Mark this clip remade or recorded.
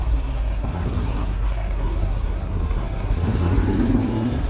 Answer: remade